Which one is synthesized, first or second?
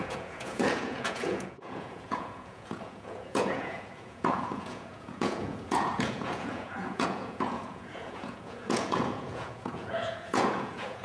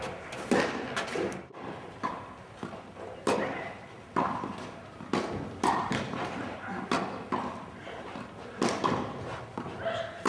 first